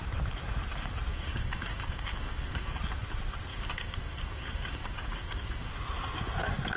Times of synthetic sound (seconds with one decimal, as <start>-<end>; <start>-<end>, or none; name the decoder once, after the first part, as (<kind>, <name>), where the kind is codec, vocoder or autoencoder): 1.1-2.8 (codec, DAC); 3.5-5.7